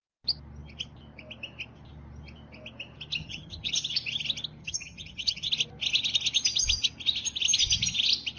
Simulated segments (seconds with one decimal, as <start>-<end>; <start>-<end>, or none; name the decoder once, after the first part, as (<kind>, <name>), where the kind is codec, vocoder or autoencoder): 3.2-3.7 (vocoder, HiFi-GAN); 4.6-5.5